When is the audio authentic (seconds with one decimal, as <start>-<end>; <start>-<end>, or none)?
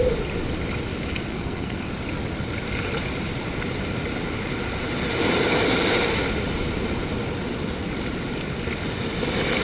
0.0-1.3; 1.9-9.6